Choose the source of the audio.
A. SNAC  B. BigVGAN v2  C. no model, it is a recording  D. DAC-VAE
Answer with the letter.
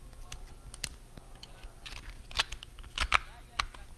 C